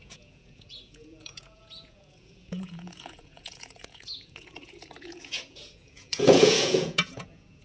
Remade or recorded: remade